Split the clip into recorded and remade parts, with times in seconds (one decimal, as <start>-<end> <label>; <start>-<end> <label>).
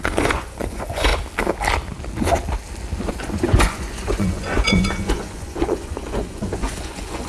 0.0-1.1 remade; 1.1-3.1 recorded; 3.1-7.3 remade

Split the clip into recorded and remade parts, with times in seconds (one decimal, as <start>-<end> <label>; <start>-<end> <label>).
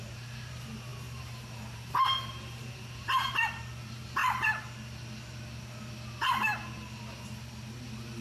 0.0-3.2 remade; 3.2-3.8 recorded; 3.8-4.2 remade; 4.2-8.2 recorded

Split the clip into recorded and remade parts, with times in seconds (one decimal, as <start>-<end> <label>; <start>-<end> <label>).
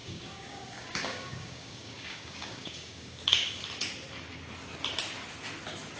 0.0-3.6 remade; 3.6-6.0 recorded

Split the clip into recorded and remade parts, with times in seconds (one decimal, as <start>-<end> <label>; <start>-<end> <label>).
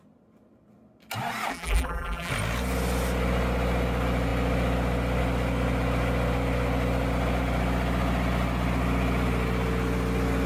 0.0-1.5 recorded; 1.5-2.3 remade; 2.3-10.5 recorded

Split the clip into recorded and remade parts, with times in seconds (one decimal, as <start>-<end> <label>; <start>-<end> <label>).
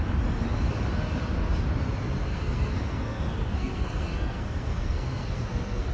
0.0-2.3 recorded; 2.3-5.9 remade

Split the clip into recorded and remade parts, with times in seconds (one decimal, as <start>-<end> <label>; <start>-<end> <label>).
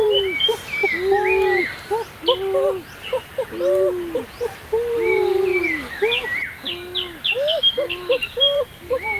0.0-0.8 remade; 0.8-4.2 recorded; 4.2-5.5 remade; 5.5-7.6 recorded; 7.6-9.2 remade